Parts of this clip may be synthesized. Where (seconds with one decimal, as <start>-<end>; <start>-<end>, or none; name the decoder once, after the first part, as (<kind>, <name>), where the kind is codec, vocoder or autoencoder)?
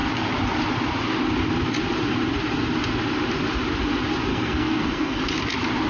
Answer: 4.3-5.2 (codec, SNAC)